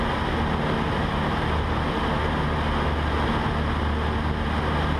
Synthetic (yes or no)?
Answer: no